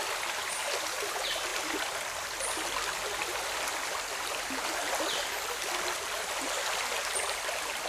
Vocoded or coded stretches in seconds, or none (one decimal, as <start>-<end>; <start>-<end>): none